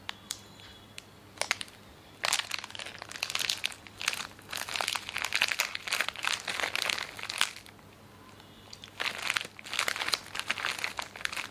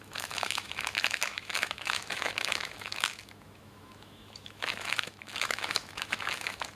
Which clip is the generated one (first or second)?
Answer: second